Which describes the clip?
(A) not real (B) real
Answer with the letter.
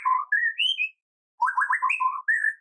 B